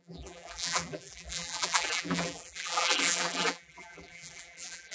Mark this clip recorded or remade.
remade